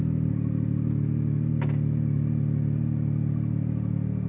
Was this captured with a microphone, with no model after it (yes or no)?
yes